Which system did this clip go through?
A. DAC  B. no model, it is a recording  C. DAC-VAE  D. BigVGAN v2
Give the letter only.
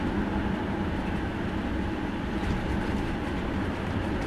D